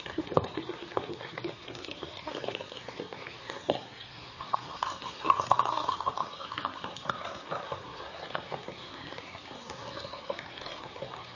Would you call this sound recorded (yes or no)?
no